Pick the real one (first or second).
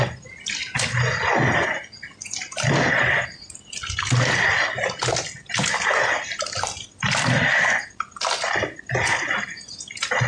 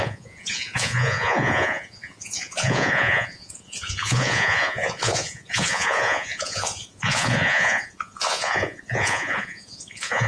first